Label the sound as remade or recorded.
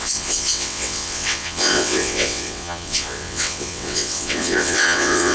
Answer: remade